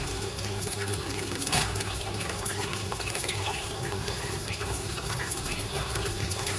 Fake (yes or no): yes